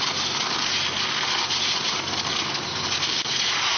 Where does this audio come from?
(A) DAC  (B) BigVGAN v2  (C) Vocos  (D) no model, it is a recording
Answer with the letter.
D